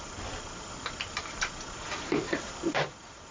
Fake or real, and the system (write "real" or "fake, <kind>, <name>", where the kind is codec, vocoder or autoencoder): fake, vocoder, BigVGAN v2